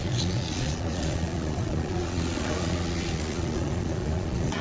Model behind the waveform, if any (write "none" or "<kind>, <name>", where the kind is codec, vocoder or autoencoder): vocoder, Vocos